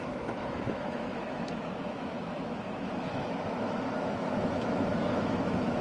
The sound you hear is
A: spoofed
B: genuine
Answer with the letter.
A